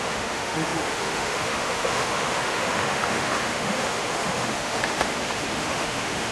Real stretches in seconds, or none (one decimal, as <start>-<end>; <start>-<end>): none